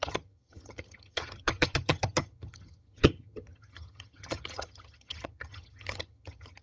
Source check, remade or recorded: remade